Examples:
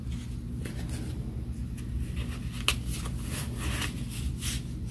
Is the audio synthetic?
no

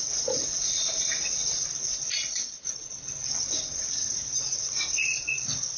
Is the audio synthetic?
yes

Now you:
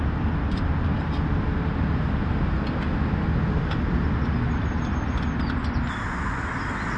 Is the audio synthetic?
no